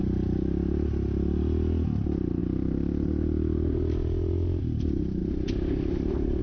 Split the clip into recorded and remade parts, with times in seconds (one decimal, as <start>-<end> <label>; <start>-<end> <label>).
0.0-6.4 recorded